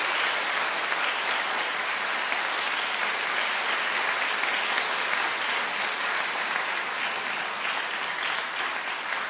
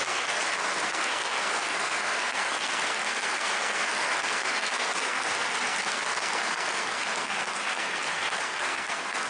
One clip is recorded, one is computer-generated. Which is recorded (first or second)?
first